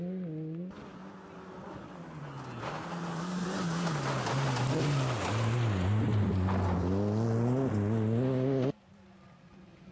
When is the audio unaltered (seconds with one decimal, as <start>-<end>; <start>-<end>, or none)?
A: 0.0-9.9